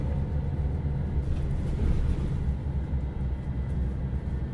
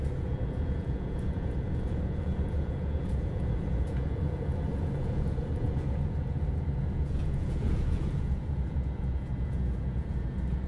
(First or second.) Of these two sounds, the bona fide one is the first